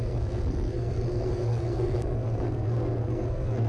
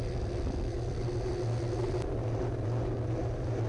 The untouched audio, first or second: second